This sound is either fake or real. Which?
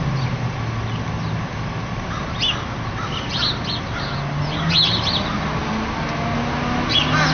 real